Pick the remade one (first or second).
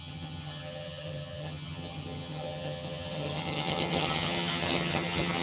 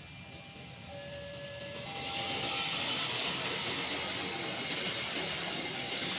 first